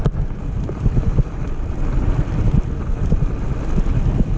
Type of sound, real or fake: real